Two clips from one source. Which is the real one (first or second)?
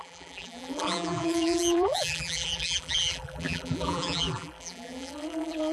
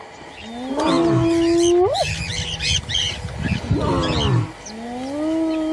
second